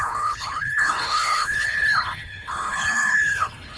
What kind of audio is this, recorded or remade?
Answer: remade